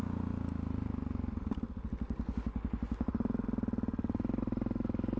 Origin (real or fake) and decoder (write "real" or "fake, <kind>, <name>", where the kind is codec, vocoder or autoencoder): real